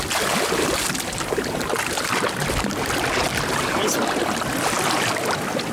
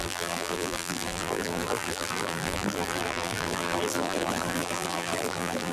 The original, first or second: first